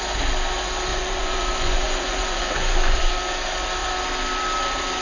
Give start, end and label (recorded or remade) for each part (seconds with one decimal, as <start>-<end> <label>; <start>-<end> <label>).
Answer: 0.0-0.9 recorded; 0.9-3.1 remade; 3.1-5.0 recorded